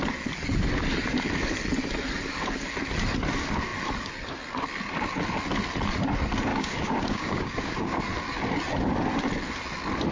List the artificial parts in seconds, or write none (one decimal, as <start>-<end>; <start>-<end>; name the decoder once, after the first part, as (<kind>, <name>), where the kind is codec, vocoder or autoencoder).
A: 6.5-8.0 (codec, DAC)